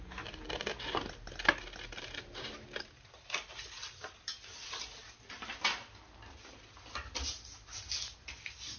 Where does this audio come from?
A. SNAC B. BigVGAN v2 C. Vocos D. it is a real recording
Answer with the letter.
D